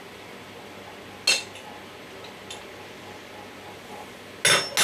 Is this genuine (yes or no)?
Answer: yes